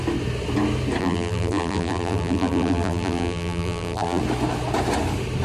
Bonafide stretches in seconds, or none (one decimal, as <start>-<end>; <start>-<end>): 0.0-1.0; 4.2-5.4